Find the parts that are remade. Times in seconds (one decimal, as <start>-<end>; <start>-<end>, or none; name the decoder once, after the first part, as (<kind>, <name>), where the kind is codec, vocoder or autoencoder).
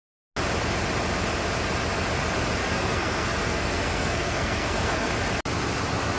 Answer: 2.6-5.1 (codec, SNAC)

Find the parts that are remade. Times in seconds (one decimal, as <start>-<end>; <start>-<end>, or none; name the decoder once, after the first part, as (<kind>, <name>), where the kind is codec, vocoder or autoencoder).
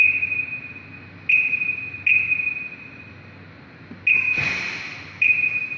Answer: none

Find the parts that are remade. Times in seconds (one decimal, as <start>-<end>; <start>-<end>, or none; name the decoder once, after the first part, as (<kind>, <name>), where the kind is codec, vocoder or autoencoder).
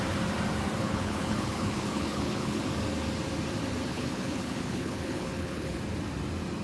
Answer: 0.8-2.6 (codec, HILCodec); 3.9-5.8